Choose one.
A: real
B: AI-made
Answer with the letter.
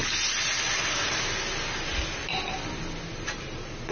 A